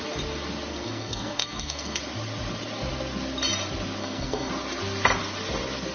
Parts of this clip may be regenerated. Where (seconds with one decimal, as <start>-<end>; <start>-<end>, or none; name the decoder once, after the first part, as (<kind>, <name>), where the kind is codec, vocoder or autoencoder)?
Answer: 0.7-2.0 (codec, SNAC); 4.0-4.5